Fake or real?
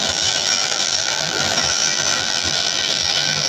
fake